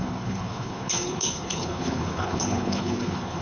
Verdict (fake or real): fake